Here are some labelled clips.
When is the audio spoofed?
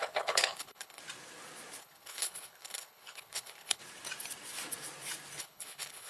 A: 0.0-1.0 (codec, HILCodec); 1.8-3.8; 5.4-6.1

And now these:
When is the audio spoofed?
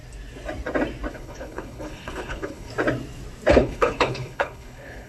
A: 1.1-2.7 (codec, HILCodec); 3.5-5.1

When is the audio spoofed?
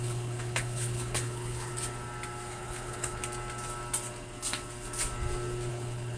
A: 0.0-1.7 (codec, HILCodec); 2.5-3.2; 5.7-6.2